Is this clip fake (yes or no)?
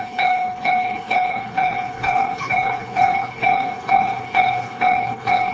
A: yes